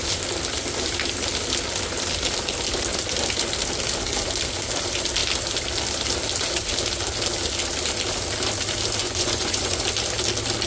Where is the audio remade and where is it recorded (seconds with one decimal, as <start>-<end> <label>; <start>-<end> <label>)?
0.0-9.0 recorded; 9.0-9.8 remade; 9.8-10.7 recorded